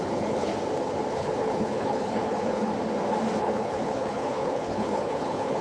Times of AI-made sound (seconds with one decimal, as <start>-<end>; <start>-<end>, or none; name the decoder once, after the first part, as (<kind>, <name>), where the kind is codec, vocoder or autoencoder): 0.0-0.5 (codec, HILCodec); 1.1-2.7; 3.4-5.6